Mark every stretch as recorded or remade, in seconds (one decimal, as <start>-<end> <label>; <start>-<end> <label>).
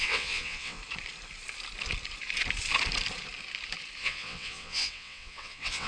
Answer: 0.0-0.8 remade; 0.8-4.0 recorded; 4.0-5.9 remade